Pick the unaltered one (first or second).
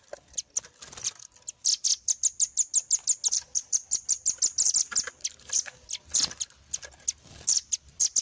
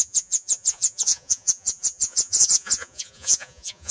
first